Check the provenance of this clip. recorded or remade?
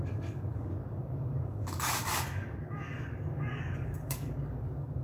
remade